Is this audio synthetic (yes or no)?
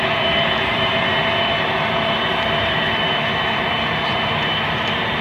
yes